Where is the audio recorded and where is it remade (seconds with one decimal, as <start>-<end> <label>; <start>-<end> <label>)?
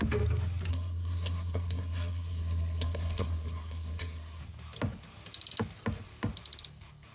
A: 0.0-0.7 recorded; 0.7-4.4 remade; 4.4-7.1 recorded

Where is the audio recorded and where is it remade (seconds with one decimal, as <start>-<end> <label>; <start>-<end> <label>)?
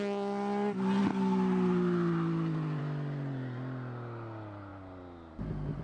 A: 0.0-5.8 recorded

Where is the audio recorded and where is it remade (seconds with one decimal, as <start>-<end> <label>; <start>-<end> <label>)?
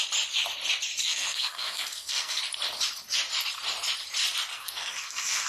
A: 0.0-1.0 recorded; 1.0-2.4 remade; 2.4-4.5 recorded; 4.5-5.5 remade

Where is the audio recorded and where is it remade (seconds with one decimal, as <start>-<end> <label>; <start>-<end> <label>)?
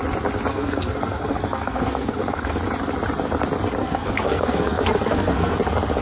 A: 0.0-0.5 recorded; 0.5-2.6 remade; 2.6-3.8 recorded; 3.8-5.5 remade; 5.5-6.0 recorded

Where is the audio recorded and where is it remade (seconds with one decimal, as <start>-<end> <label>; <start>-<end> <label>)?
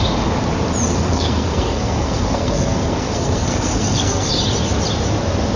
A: 0.0-0.9 recorded; 0.9-4.3 remade; 4.3-5.6 recorded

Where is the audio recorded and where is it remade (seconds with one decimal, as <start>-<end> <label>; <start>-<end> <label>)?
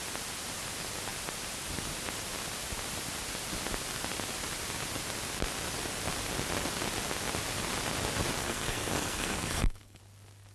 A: 0.0-8.4 recorded; 8.4-10.0 remade; 10.0-10.5 recorded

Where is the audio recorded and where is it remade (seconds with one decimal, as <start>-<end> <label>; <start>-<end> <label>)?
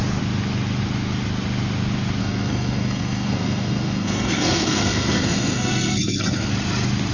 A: 0.0-2.2 recorded; 2.2-6.5 remade; 6.5-7.1 recorded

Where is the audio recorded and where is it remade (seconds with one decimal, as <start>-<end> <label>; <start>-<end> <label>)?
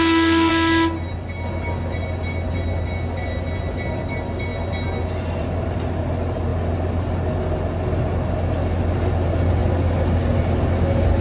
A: 0.0-0.5 remade; 0.5-11.2 recorded